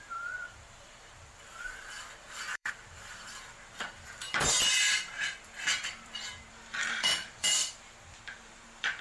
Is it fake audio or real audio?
fake